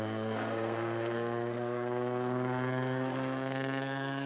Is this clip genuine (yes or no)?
no